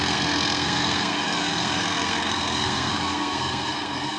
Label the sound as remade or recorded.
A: remade